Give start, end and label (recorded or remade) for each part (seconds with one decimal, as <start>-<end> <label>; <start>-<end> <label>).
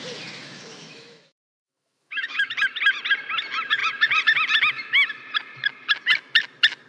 0.0-0.4 recorded; 0.4-2.5 remade; 2.5-6.9 recorded